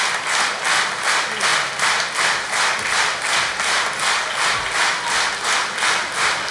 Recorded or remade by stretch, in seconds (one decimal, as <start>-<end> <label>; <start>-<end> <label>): 0.0-6.5 recorded